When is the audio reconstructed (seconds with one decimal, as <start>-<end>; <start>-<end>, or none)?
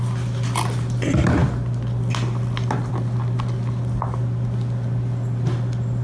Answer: none